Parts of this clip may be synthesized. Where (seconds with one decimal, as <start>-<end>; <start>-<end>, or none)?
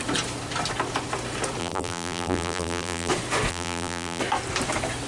1.6-3.1; 3.5-4.2